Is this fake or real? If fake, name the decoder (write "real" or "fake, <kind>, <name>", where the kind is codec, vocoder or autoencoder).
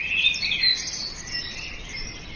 real